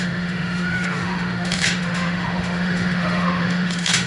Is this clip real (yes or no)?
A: no